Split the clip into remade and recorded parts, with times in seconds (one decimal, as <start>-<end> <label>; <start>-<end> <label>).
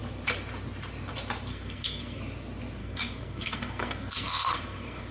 0.0-1.5 recorded; 1.5-2.2 remade; 2.2-2.8 recorded; 2.8-5.1 remade